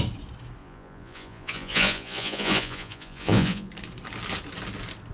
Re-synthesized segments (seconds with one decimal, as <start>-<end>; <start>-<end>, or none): 0.6-3.7